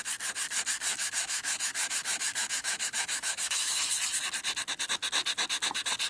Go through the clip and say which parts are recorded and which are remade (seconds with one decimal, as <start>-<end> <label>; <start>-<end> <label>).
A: 0.0-0.9 recorded; 0.9-3.9 remade; 3.9-6.1 recorded